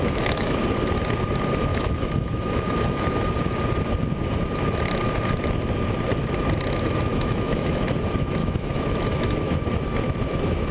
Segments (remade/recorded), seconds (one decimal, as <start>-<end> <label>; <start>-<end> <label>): 0.0-0.6 remade; 0.6-1.7 recorded; 1.7-3.3 remade; 3.3-7.1 recorded; 7.1-7.8 remade; 7.8-8.4 recorded; 8.4-9.5 remade; 9.5-10.7 recorded